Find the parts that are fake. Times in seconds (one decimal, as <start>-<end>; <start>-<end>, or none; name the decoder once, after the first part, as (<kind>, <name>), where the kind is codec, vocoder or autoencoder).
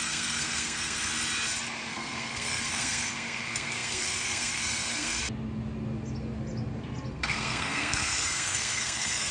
0.0-1.1 (codec, SNAC); 1.9-5.2; 7.1-9.3